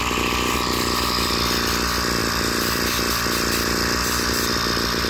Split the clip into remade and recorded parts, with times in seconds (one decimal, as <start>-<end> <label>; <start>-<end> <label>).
0.0-2.2 recorded; 2.2-4.5 remade; 4.5-5.1 recorded